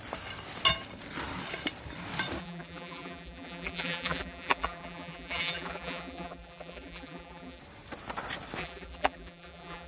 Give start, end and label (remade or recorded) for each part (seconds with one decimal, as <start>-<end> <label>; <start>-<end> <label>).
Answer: 0.0-2.4 recorded; 2.4-7.6 remade; 7.6-8.6 recorded; 8.6-9.9 remade